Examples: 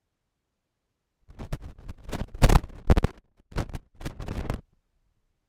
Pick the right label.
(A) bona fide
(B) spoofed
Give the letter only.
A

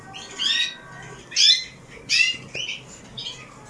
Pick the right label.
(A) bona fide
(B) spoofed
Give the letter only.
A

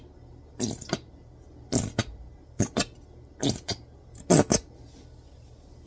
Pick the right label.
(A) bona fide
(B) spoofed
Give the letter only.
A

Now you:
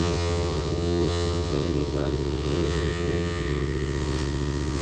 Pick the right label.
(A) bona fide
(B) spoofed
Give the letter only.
B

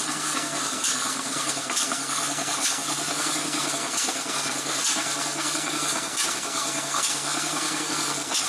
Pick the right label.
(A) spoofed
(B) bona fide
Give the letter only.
A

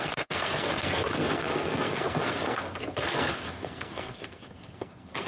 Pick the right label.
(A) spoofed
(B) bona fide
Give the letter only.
A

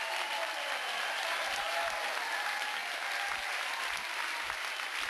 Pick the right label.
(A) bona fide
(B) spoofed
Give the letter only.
A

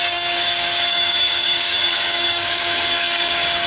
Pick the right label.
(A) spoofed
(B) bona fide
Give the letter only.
A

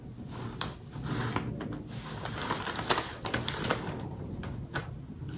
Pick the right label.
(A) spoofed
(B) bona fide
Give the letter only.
B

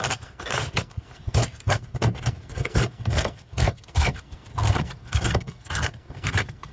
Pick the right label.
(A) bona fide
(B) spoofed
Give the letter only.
B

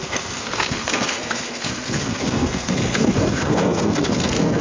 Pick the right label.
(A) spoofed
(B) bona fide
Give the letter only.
A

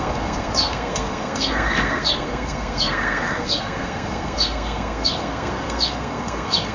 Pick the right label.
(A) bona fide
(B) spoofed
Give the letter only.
B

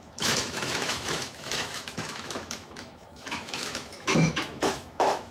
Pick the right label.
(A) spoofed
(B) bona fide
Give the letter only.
A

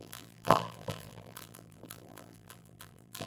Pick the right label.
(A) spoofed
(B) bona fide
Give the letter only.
A